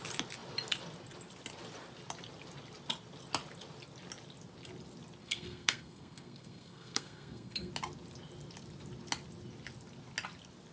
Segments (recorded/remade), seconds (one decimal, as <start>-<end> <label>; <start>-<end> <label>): 0.0-5.2 recorded; 5.2-7.7 remade; 7.7-10.7 recorded